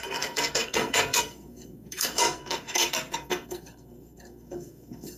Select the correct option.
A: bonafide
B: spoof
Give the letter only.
B